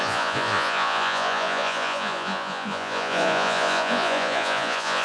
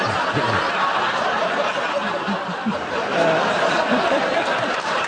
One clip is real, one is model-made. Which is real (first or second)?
second